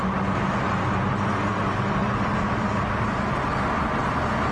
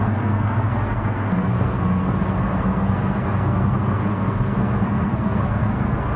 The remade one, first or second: second